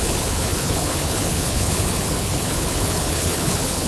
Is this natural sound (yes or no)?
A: no